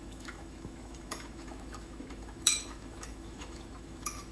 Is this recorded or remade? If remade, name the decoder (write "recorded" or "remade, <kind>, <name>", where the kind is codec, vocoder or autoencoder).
remade, autoencoder, DAC-VAE